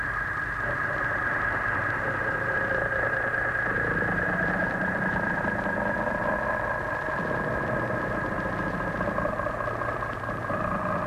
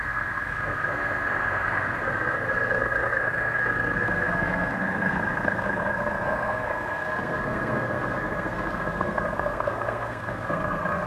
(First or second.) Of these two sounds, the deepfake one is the second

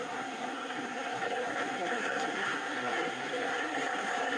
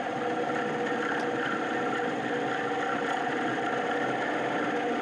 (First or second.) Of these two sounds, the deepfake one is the first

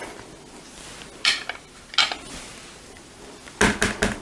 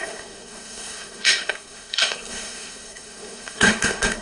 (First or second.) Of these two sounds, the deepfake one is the second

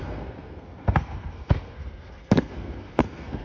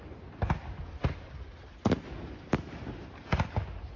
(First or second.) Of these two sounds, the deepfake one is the first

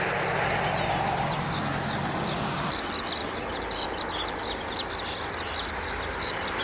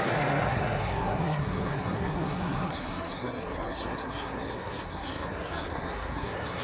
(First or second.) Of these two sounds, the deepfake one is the second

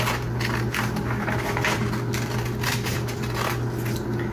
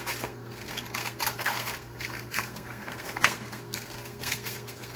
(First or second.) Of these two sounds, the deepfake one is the second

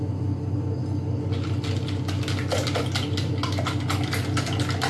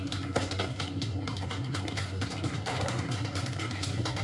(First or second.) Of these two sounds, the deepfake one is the second